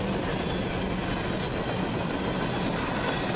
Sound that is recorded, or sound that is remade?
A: recorded